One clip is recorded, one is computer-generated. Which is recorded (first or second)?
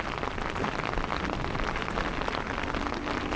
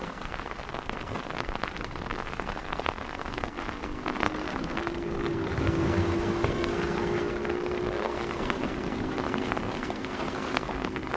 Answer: first